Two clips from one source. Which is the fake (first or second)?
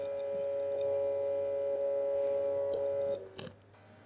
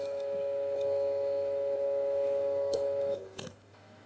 second